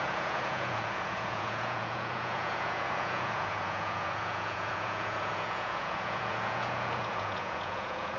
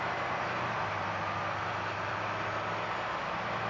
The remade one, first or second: first